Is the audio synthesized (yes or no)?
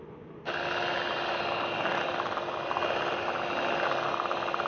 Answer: no